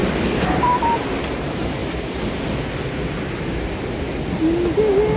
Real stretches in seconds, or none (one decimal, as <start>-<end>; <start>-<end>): 0.0-0.6; 1.8-5.2